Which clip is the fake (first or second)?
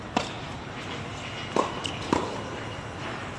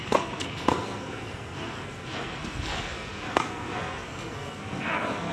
second